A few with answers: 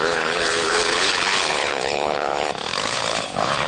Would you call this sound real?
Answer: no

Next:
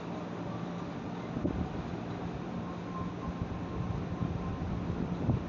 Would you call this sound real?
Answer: yes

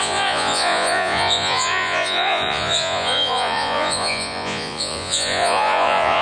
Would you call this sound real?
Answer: no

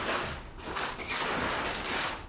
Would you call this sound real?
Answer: yes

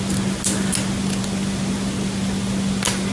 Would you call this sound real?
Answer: yes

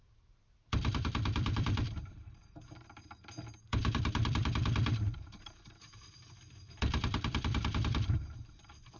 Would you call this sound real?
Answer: no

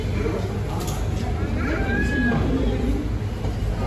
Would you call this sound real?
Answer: yes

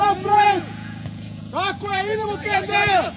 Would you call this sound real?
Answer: no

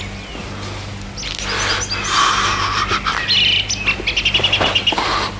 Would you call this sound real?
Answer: yes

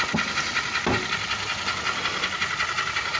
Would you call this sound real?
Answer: yes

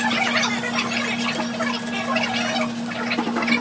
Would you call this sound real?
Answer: yes